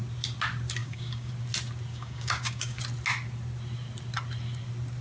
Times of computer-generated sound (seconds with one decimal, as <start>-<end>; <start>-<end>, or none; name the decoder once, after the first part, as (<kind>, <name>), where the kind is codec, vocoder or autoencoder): 0.8-1.3 (codec, DAC); 1.9-2.8